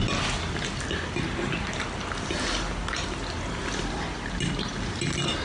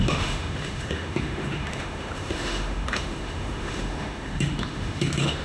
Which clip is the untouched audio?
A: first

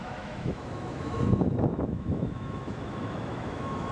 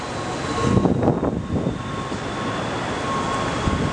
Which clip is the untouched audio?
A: second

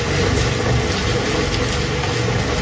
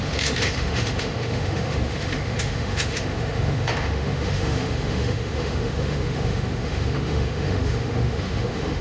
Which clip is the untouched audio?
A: first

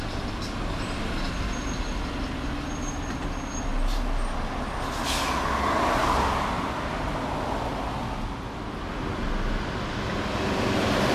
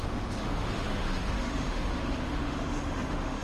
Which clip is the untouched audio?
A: first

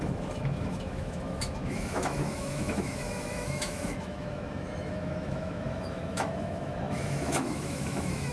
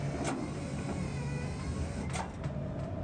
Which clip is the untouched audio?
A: second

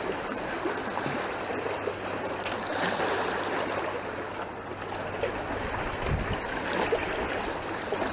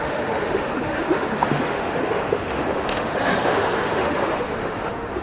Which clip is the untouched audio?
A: first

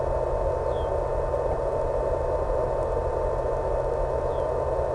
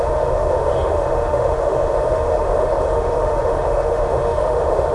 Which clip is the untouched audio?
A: first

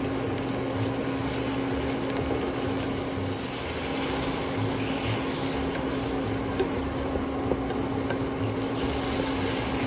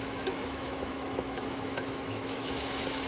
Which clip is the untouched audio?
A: first